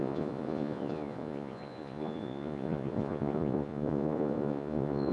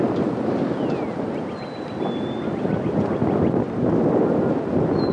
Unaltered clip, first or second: second